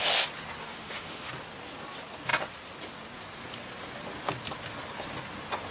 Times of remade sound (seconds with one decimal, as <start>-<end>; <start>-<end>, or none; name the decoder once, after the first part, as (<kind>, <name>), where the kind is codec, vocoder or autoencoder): 0.6-1.3 (autoencoder, DAC-VAE)